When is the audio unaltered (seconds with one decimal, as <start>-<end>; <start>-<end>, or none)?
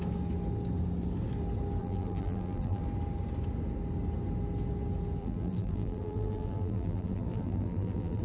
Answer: 0.0-1.8; 2.8-5.2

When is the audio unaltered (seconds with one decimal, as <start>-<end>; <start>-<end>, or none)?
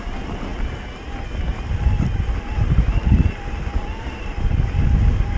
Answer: 0.0-5.4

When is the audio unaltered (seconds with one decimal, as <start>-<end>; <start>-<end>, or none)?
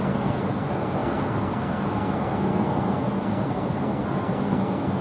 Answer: none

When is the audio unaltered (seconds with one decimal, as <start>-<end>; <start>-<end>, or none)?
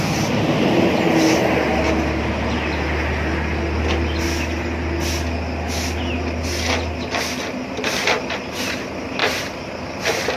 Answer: 0.0-10.4